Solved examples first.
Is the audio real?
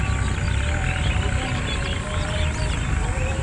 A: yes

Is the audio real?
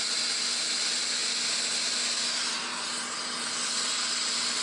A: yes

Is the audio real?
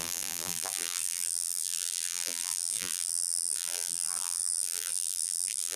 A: no